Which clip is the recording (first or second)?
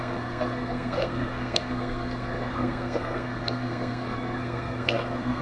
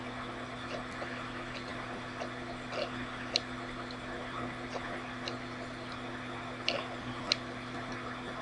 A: second